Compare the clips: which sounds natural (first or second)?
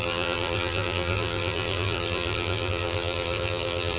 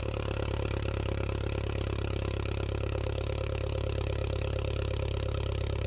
second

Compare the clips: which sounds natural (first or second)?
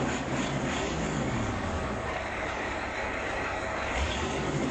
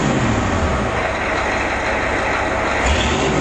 second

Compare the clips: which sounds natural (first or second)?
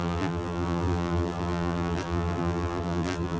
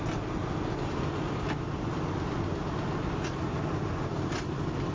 second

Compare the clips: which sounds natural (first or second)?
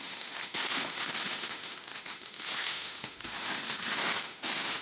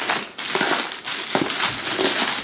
second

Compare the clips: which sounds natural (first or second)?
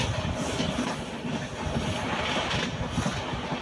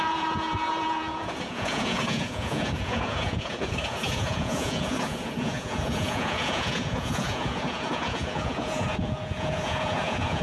first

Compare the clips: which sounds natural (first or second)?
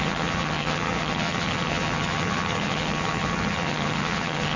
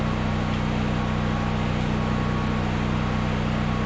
second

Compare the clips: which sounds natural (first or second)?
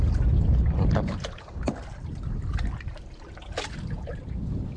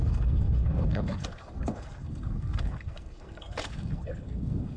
first